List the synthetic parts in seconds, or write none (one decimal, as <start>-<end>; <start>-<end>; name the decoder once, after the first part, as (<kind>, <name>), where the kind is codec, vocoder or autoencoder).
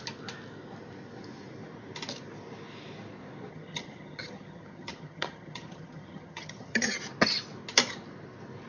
3.5-7.0 (vocoder, HiFi-GAN)